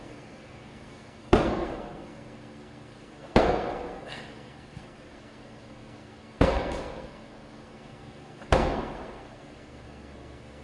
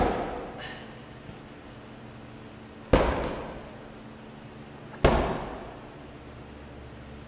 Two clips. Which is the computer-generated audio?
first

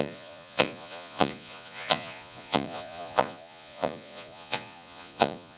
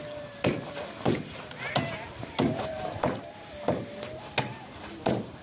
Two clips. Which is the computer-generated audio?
first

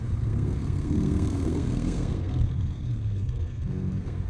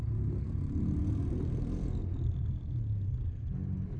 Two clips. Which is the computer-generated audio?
first